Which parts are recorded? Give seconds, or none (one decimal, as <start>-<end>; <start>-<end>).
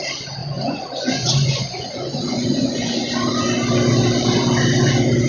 0.0-0.4; 3.0-5.3